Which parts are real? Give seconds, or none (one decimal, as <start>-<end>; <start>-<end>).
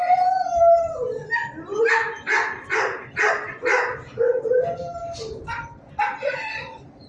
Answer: 0.0-1.7; 6.0-7.1